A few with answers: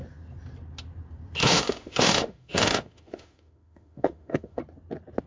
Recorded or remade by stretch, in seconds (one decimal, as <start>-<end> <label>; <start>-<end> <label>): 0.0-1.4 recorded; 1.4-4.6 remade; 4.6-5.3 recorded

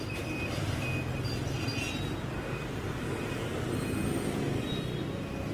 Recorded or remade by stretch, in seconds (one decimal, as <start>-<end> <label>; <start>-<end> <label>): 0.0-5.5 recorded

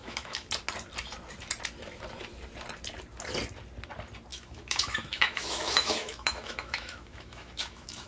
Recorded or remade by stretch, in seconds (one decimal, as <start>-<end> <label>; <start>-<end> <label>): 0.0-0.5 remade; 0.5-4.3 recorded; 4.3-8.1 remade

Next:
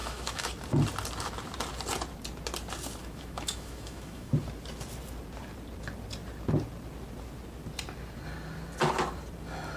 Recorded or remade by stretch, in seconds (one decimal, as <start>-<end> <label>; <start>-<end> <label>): 0.0-0.5 remade; 0.5-3.0 recorded; 3.0-4.3 remade; 4.3-9.8 recorded

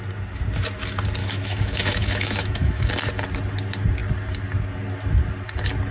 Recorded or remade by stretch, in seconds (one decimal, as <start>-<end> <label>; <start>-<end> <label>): 0.0-1.2 recorded; 1.2-2.9 remade; 2.9-5.9 recorded